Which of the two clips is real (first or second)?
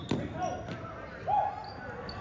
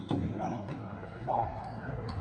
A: first